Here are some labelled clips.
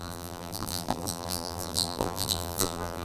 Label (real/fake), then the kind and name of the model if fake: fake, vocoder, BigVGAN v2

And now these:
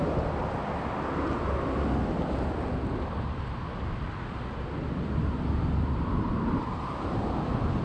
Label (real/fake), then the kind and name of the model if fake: real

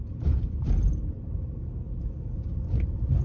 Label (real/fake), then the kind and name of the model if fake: fake, vocoder, BigVGAN v2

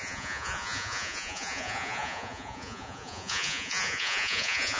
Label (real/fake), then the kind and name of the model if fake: fake, vocoder, Vocos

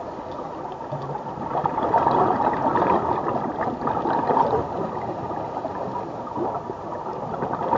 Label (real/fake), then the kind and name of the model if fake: fake, vocoder, BigVGAN v2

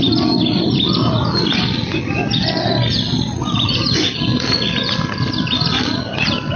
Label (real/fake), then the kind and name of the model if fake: real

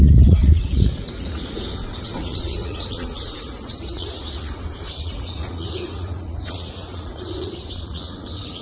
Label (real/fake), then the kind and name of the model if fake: fake, vocoder, Vocos